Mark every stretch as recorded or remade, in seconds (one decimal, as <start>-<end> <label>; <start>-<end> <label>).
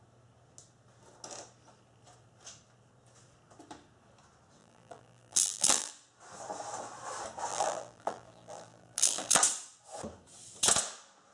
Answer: 0.0-4.6 recorded; 4.6-5.9 remade; 5.9-7.5 recorded; 7.5-9.4 remade; 9.4-11.3 recorded